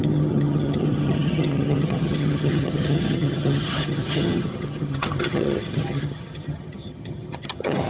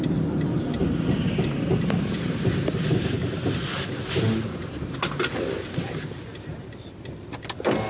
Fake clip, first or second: first